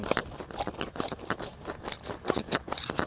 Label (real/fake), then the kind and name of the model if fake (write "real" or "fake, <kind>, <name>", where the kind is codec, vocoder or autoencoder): real